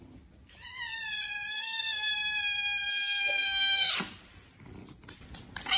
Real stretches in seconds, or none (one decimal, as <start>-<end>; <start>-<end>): 0.0-1.5; 2.1-2.9; 3.9-5.8